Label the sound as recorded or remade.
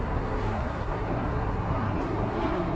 remade